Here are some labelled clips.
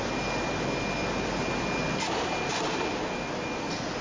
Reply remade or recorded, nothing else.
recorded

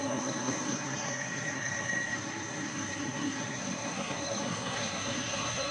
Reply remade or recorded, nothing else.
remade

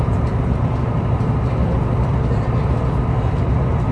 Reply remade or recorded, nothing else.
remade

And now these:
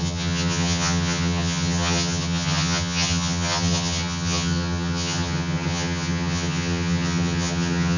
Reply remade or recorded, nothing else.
remade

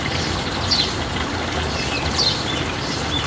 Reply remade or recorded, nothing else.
recorded